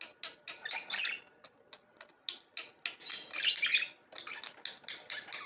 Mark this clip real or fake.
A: real